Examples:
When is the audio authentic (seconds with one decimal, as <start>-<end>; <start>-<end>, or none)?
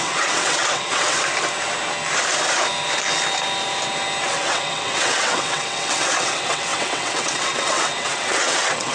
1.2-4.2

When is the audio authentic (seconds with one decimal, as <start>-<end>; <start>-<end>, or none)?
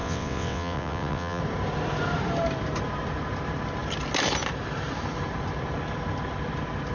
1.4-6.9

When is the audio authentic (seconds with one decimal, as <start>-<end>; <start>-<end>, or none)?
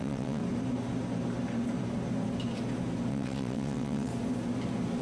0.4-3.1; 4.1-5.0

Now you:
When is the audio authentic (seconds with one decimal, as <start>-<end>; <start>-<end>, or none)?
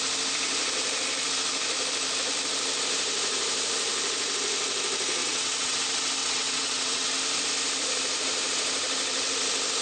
0.0-5.2; 5.8-6.2; 7.1-9.8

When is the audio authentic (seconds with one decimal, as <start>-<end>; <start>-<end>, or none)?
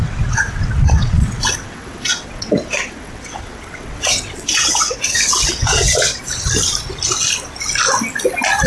6.2-8.7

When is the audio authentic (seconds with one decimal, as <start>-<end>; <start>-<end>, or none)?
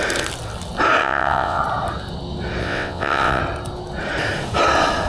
0.0-1.0; 1.6-2.6; 3.4-5.1